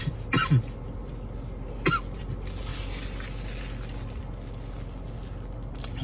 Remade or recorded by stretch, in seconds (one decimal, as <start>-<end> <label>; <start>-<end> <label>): 0.0-6.0 recorded